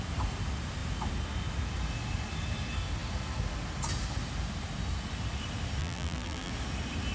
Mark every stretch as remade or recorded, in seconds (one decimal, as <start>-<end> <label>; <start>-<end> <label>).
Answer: 0.0-5.8 recorded; 5.8-6.5 remade; 6.5-7.1 recorded